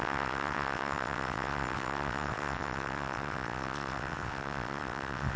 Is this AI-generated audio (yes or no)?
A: yes